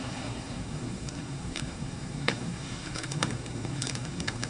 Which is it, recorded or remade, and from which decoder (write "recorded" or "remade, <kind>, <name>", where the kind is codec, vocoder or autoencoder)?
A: remade, codec, SNAC